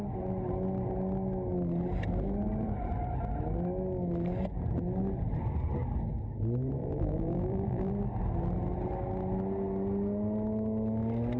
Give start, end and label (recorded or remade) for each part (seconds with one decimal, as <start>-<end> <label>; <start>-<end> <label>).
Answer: 0.0-6.8 recorded; 6.8-7.9 remade; 7.9-11.4 recorded